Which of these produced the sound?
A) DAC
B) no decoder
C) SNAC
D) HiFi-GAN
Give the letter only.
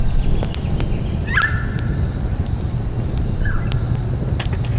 B